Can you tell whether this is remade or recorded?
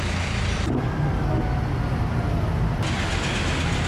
recorded